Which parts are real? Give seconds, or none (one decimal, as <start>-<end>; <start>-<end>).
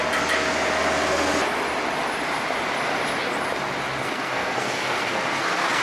0.0-4.0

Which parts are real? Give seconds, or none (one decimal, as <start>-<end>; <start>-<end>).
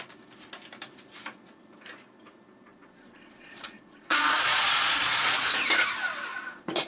0.0-2.7; 5.4-6.3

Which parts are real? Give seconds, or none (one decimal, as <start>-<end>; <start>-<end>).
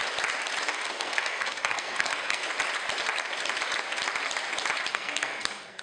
0.0-0.7; 2.5-4.9